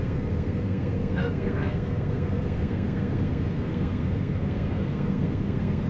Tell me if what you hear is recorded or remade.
remade